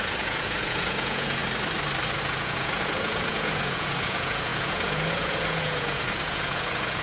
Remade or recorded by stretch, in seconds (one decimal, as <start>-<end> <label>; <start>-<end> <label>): 0.0-1.4 remade; 1.4-2.2 recorded; 2.2-7.0 remade